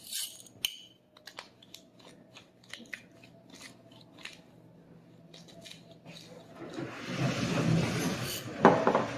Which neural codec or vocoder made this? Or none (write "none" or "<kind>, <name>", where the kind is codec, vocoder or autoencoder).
none